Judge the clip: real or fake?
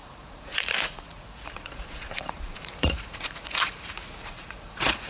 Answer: fake